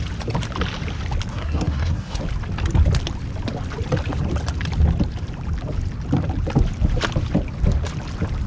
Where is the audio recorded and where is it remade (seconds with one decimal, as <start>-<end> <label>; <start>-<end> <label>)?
0.0-1.3 recorded; 1.3-2.2 remade; 2.2-8.5 recorded